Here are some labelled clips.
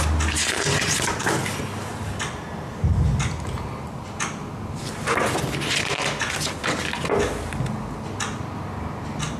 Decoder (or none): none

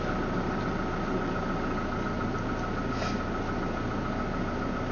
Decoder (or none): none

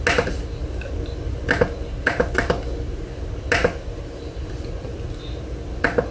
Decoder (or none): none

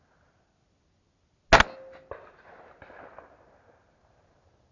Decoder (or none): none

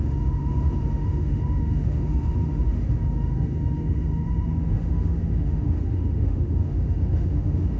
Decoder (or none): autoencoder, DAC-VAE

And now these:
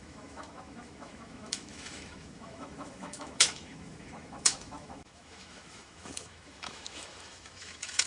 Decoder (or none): autoencoder, DAC-VAE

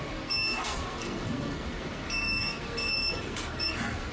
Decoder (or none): codec, SNAC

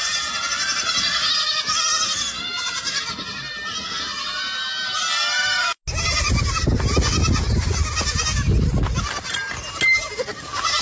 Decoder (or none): none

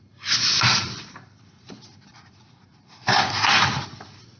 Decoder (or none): none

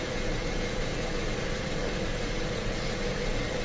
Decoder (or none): vocoder, Vocos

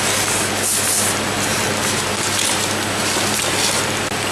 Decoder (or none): none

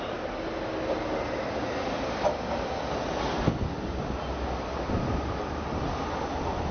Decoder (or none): none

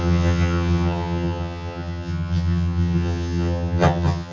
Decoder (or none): vocoder, HiFi-GAN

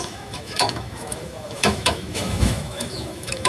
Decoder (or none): autoencoder, DAC-VAE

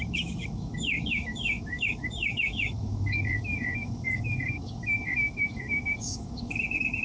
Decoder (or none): autoencoder, DAC-VAE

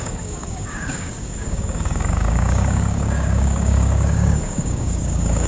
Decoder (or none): codec, DAC